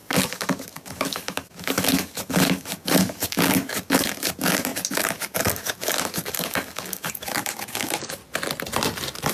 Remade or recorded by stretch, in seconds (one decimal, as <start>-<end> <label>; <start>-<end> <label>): 0.0-8.2 remade; 8.2-9.3 recorded